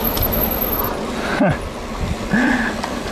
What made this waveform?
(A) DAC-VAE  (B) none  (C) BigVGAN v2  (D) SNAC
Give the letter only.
B